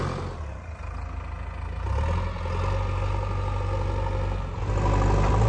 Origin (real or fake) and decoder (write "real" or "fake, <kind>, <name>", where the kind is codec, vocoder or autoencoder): real